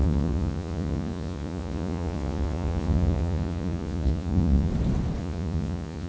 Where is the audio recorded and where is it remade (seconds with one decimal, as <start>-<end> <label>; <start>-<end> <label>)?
0.0-4.7 remade; 4.7-5.2 recorded; 5.2-6.1 remade